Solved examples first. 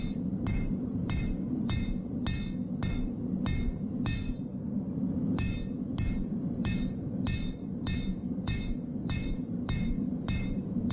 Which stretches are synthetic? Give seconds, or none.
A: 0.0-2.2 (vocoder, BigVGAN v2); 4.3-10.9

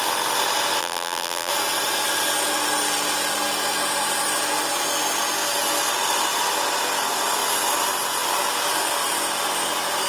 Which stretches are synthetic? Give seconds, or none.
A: 0.8-1.5 (vocoder, BigVGAN v2)

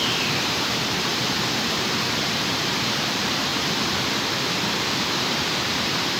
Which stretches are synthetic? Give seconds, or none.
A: 0.0-3.5 (vocoder, BigVGAN v2); 4.8-6.2

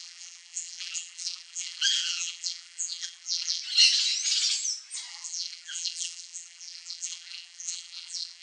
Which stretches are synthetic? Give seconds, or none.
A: 0.0-3.6 (vocoder, BigVGAN v2); 5.1-8.4

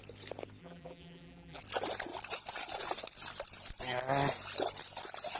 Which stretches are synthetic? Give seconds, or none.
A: 0.6-1.6 (vocoder, BigVGAN v2)

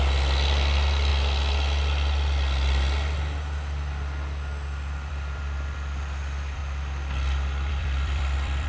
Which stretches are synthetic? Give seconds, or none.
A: 0.0-1.1 (vocoder, BigVGAN v2); 5.1-6.6; 7.7-8.7

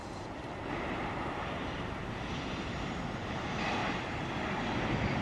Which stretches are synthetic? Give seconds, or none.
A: 0.0-3.8 (vocoder, BigVGAN v2); 4.8-5.2

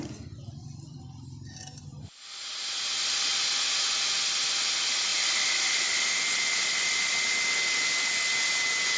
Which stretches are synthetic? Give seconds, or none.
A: 5.1-5.8 (vocoder, BigVGAN v2)